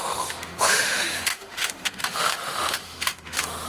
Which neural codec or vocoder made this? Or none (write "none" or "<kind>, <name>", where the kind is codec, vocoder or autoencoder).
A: autoencoder, DAC-VAE